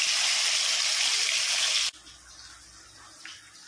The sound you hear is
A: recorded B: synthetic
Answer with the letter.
A